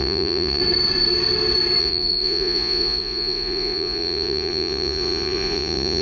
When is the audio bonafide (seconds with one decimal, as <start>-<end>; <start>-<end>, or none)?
0.6-1.8